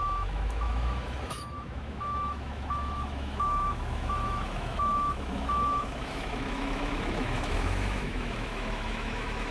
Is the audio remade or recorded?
remade